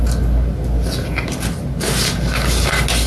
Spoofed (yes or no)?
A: no